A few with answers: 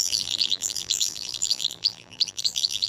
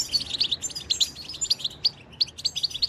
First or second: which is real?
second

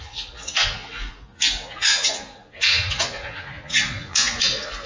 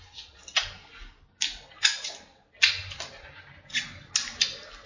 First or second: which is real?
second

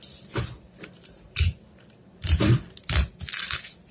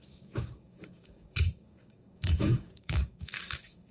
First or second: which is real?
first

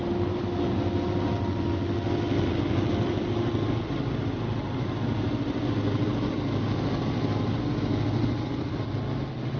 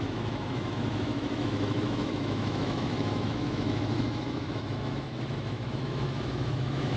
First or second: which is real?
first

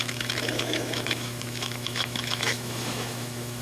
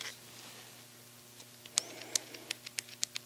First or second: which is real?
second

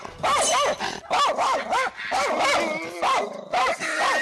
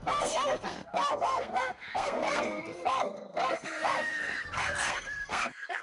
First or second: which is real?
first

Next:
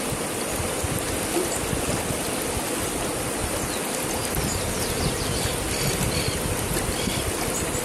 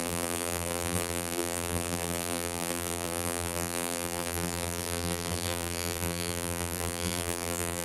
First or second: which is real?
first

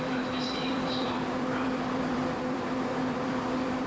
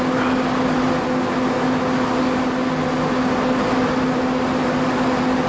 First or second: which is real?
second